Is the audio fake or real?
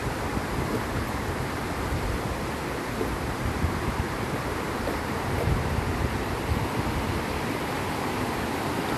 fake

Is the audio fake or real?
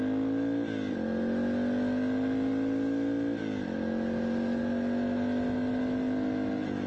real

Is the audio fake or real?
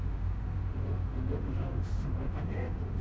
fake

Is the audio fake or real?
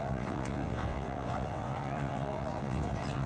fake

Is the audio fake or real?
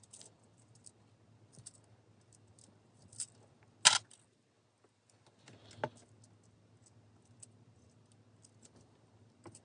real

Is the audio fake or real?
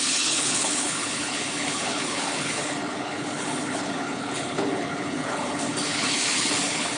fake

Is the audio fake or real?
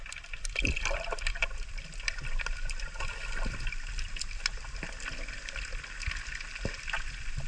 real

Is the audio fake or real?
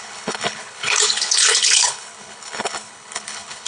fake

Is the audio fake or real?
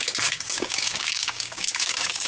fake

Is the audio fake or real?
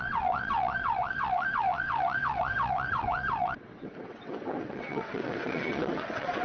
fake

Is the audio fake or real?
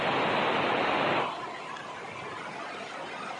real